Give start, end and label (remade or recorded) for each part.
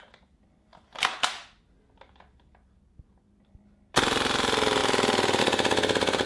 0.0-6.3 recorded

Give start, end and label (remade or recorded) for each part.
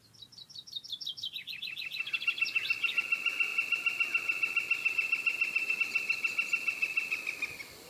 0.0-7.9 recorded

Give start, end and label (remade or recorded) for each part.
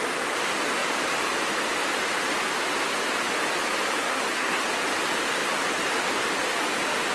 0.0-4.0 recorded; 4.0-4.6 remade; 4.6-7.1 recorded